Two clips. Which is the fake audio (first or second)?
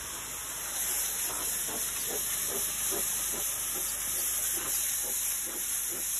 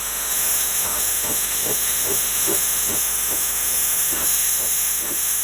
second